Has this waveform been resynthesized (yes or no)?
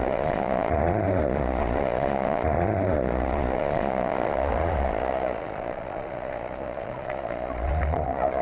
yes